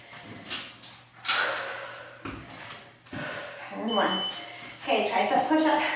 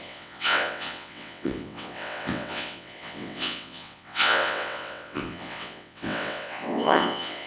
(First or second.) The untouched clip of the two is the first